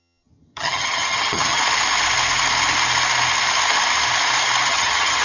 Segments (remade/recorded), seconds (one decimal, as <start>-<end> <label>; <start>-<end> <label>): 0.0-1.6 remade; 1.6-4.7 recorded; 4.7-5.2 remade